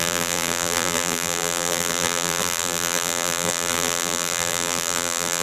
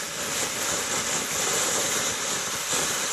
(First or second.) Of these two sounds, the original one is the second